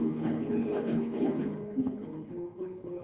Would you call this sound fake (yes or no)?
yes